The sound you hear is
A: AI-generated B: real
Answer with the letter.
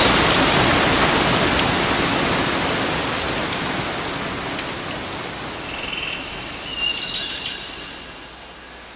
B